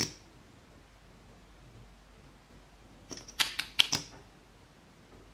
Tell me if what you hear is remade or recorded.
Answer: recorded